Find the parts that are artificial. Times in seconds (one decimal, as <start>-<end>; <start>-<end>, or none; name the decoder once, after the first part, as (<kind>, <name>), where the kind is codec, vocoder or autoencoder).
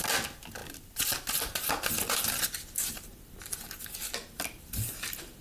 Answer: none